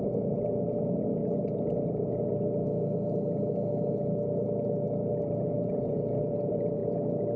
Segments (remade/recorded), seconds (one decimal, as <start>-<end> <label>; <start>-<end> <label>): 0.0-1.2 remade; 1.2-5.6 recorded; 5.6-6.8 remade; 6.8-7.4 recorded